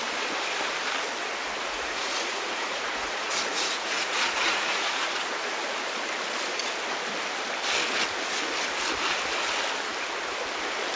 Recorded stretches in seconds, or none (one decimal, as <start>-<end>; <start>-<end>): 0.0-1.6; 5.6-11.0